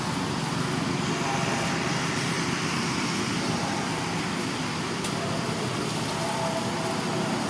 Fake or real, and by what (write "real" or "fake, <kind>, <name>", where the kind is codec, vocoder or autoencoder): real